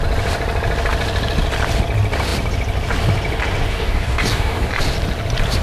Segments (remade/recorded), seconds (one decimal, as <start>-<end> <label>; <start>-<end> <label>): 0.0-3.7 recorded; 3.7-4.7 remade; 4.7-5.6 recorded